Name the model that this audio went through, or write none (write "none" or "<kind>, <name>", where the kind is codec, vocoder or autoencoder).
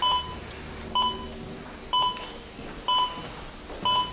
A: none